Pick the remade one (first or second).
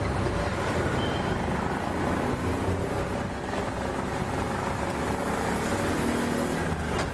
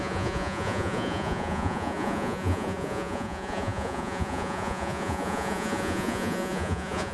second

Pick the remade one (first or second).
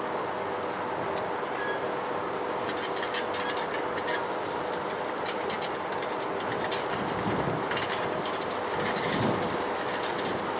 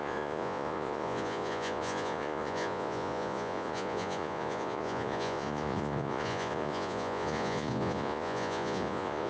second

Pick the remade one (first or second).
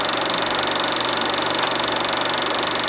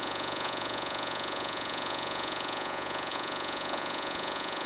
second